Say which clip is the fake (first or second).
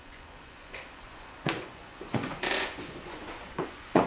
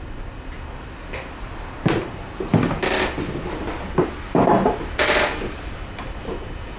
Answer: first